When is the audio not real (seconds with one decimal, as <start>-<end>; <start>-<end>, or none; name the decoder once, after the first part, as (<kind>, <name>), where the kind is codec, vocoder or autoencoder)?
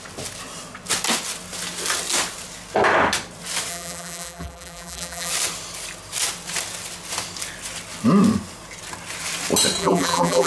3.7-5.3 (vocoder, BigVGAN v2); 9.8-10.5